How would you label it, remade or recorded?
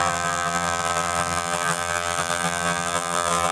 remade